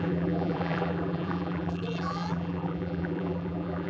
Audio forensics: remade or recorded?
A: remade